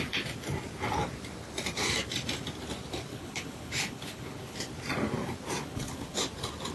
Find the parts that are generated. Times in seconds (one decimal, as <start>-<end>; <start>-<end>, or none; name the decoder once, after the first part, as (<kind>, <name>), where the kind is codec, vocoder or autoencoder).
3.1-4.7 (codec, HILCodec); 5.6-6.2